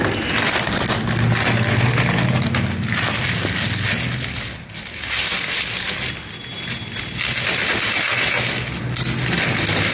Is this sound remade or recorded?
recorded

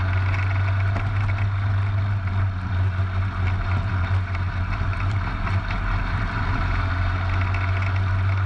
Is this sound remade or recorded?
recorded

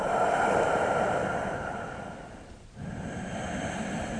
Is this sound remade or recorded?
remade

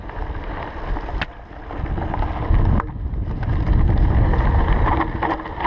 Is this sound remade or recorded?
recorded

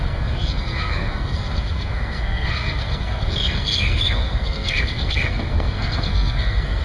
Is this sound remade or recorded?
remade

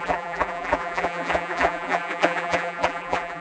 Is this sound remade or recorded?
remade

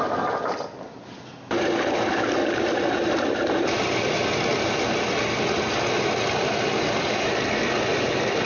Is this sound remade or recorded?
recorded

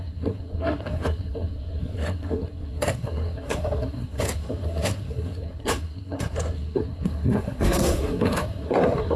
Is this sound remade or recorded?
remade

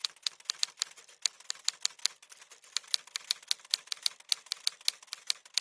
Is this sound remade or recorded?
recorded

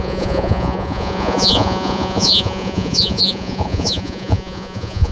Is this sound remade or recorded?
remade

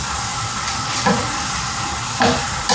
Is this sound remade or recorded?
recorded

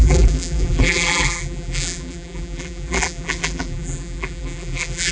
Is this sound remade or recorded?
remade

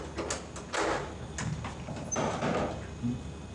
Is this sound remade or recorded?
recorded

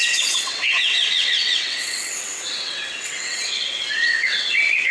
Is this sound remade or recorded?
remade